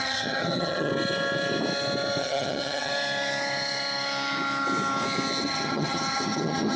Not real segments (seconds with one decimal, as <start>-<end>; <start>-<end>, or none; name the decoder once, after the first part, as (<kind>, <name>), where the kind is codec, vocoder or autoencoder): 0.0-0.9 (vocoder, HiFi-GAN); 2.2-2.9; 5.4-6.8